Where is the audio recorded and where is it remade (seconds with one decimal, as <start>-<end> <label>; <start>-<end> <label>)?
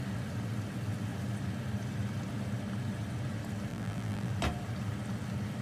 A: 0.0-3.7 recorded; 3.7-4.3 remade; 4.3-5.6 recorded